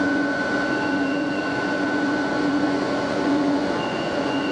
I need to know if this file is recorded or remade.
remade